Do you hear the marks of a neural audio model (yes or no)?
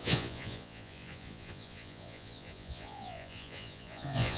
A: yes